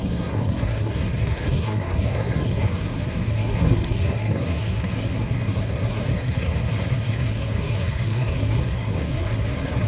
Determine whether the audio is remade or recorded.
remade